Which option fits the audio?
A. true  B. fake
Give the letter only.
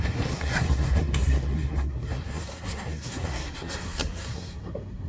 B